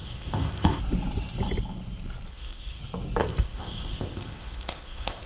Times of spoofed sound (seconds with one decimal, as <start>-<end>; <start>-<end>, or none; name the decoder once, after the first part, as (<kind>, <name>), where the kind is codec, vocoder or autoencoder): 0.0-0.8 (codec, ZipCodec); 2.3-2.8; 3.2-5.3